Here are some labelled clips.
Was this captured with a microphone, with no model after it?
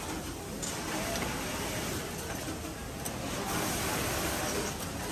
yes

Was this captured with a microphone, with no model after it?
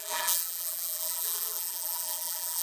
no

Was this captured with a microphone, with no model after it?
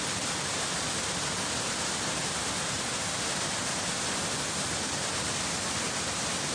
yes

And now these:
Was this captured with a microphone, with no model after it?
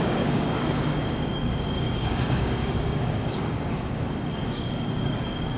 no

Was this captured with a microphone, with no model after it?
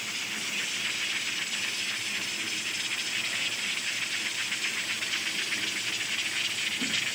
yes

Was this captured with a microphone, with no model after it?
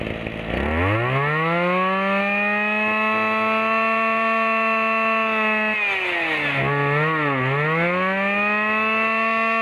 yes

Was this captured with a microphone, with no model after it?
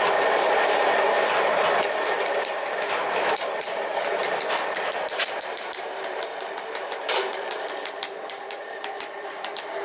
no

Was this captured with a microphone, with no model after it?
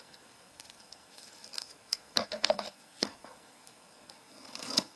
no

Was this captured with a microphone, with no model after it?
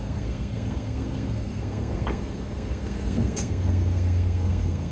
no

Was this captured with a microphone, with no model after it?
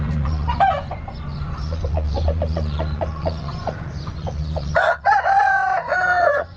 no